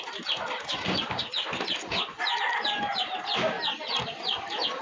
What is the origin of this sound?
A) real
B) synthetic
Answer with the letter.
A